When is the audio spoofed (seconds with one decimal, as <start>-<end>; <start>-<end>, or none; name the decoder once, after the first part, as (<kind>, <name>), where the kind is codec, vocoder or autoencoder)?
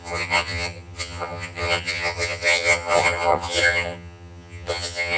0.0-5.2 (vocoder, HiFi-GAN)